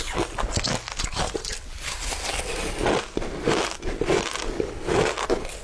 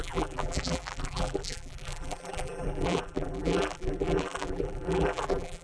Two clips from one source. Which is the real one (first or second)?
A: first